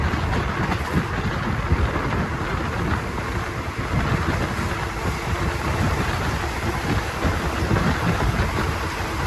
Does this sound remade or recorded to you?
recorded